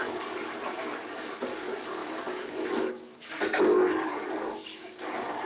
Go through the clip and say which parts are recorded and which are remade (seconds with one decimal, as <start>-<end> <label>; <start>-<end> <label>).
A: 0.0-5.5 remade